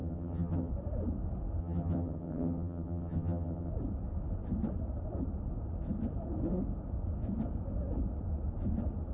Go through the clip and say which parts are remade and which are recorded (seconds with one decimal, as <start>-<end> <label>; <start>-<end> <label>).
0.0-0.7 remade; 0.7-1.6 recorded; 1.6-3.7 remade; 3.7-9.1 recorded